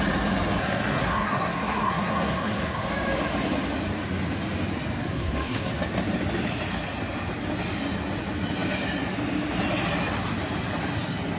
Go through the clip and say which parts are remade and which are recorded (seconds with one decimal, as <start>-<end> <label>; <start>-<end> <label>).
0.0-0.6 recorded; 0.6-2.9 remade; 2.9-5.0 recorded; 5.0-5.7 remade; 5.7-11.4 recorded